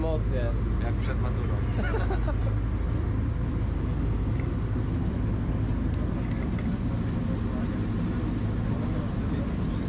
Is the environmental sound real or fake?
real